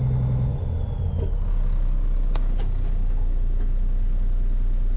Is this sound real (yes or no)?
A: yes